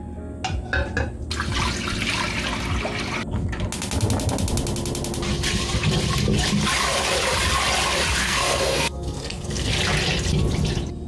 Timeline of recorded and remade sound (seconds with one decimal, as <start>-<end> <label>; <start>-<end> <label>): 0.0-8.2 recorded; 8.2-9.8 remade; 9.8-11.1 recorded